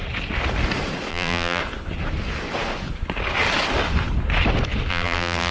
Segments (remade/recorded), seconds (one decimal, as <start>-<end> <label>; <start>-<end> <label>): 0.0-1.1 recorded; 1.1-1.6 remade; 1.6-4.9 recorded; 4.9-5.5 remade